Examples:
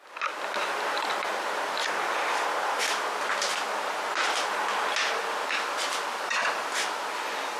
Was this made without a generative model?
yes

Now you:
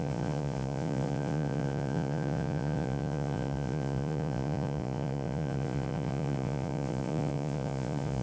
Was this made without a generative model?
no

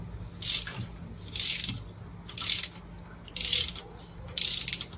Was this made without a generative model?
yes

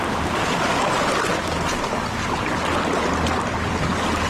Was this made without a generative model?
yes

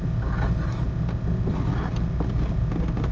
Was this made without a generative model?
yes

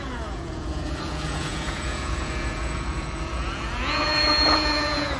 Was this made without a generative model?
no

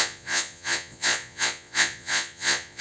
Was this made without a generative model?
no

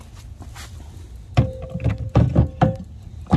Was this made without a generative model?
yes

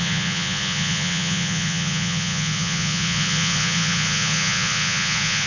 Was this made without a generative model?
no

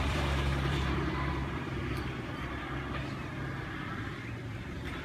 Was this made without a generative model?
no